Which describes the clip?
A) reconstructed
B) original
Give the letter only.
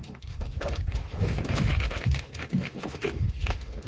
A